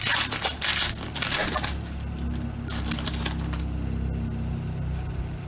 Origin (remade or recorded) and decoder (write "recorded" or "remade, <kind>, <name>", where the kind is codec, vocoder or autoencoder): recorded